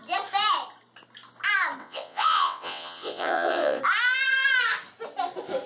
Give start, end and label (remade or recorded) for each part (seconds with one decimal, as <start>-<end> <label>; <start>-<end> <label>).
0.0-1.8 recorded; 1.8-3.8 remade; 3.8-5.7 recorded